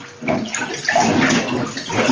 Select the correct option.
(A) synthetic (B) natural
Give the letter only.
B